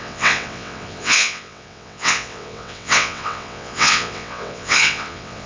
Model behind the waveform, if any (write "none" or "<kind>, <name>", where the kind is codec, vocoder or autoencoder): vocoder, WaveNeXt